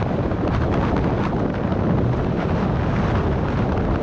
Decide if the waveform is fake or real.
real